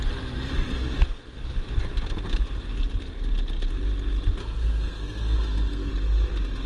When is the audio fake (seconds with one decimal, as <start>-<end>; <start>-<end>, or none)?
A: 4.4-5.9